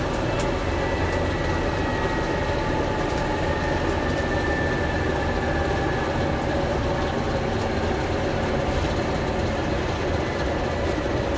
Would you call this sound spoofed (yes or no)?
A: no